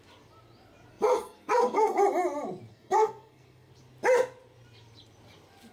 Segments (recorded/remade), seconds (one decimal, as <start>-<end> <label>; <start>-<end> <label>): 0.0-0.9 recorded; 0.9-2.0 remade; 2.0-2.7 recorded; 2.7-3.7 remade; 3.7-5.7 recorded